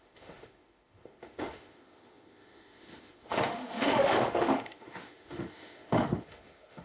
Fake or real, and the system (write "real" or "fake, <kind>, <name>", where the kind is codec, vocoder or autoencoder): fake, autoencoder, DAC-VAE